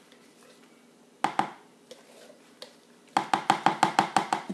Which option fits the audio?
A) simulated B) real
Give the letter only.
B